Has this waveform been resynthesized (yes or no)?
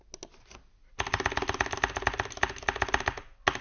no